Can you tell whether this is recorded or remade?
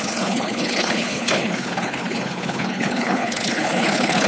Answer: remade